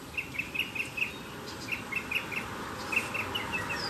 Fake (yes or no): no